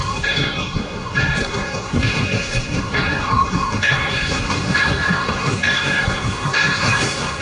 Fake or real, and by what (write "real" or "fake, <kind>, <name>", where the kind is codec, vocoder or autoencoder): fake, codec, SNAC